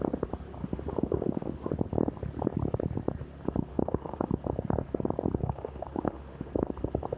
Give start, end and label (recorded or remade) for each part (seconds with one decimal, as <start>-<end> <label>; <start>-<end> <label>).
0.0-0.6 recorded; 0.6-1.7 remade; 1.7-3.7 recorded; 3.7-4.3 remade; 4.3-5.4 recorded; 5.4-6.5 remade; 6.5-7.2 recorded

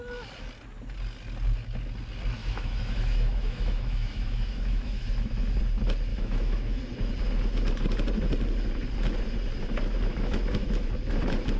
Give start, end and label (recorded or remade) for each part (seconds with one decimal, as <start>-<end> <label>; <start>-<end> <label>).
0.0-2.4 recorded; 2.4-5.6 remade; 5.6-6.1 recorded; 6.1-6.8 remade; 6.8-10.1 recorded; 10.1-10.9 remade; 10.9-11.6 recorded